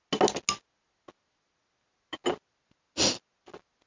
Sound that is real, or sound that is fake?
real